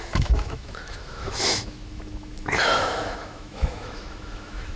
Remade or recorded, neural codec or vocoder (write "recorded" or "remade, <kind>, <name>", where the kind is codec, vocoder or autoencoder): remade, autoencoder, DAC-VAE